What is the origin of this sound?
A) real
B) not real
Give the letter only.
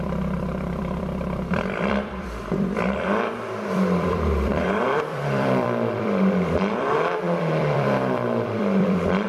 B